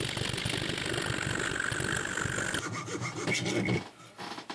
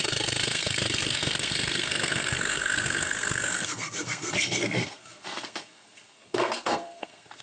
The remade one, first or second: second